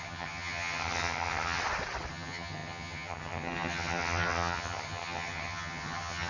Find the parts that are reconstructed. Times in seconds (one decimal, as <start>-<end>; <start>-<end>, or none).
0.0-1.6; 2.1-6.3